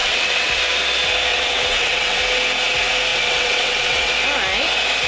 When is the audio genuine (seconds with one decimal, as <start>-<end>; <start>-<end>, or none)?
0.6-1.3; 2.2-3.1; 4.1-5.1

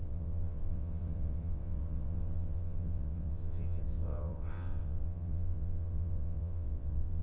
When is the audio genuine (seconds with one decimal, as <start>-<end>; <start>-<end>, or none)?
none

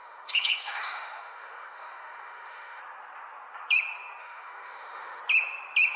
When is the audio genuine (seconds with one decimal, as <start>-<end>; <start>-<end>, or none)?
2.8-4.2; 5.2-6.0

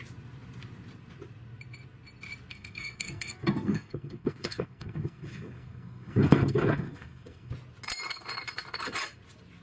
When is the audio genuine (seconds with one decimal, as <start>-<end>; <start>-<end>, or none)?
0.0-2.5; 7.5-9.6

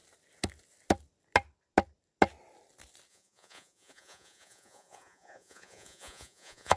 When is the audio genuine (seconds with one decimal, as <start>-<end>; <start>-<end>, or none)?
0.0-3.1

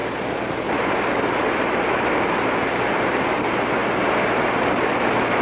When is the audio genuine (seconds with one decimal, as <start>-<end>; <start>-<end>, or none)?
2.1-3.8; 4.5-5.4

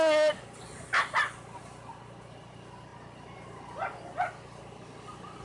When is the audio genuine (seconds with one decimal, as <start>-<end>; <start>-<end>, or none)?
0.0-5.4

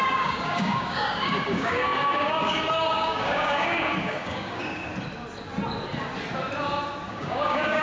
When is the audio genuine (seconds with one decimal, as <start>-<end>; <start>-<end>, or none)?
4.9-7.1